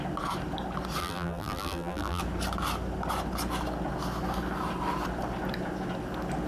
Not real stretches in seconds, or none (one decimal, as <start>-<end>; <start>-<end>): 1.0-2.2